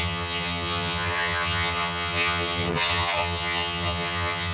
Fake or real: fake